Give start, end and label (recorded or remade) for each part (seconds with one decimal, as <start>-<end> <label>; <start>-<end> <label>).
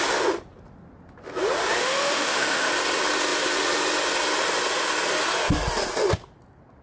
0.0-1.8 recorded; 1.8-2.7 remade; 2.7-6.8 recorded